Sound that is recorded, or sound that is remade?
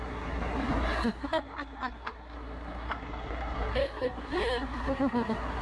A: remade